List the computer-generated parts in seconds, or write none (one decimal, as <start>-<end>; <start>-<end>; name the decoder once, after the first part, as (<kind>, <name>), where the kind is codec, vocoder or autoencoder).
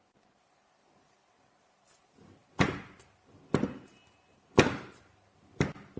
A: none